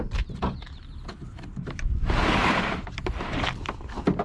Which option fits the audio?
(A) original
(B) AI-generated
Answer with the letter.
B